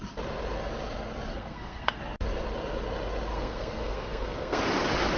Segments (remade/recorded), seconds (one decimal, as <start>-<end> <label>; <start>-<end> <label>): 0.0-1.3 recorded; 1.3-2.0 remade; 2.0-3.3 recorded; 3.3-4.6 remade; 4.6-5.2 recorded